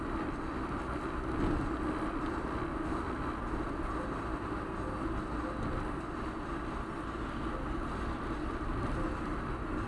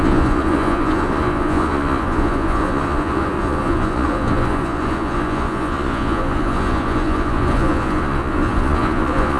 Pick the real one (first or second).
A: first